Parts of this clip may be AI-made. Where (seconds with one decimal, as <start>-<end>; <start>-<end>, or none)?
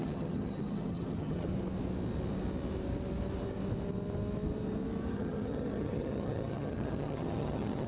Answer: 0.0-1.5; 5.1-7.9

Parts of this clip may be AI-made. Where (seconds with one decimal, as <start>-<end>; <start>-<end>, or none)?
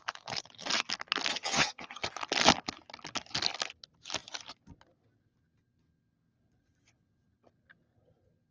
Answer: 1.3-2.1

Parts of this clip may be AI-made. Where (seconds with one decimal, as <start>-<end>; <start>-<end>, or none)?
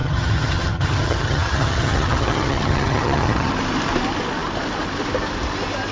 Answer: 0.0-3.5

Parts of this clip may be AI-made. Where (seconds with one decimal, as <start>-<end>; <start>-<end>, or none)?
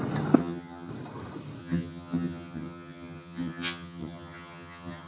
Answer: 0.4-0.9; 1.6-5.1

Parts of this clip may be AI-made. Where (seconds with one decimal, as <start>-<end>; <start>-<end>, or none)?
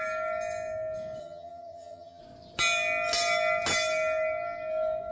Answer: 1.2-2.2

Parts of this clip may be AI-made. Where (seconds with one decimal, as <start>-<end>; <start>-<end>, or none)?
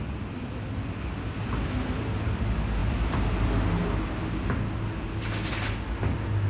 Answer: none